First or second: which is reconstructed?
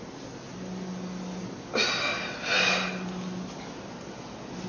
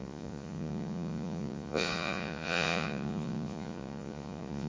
second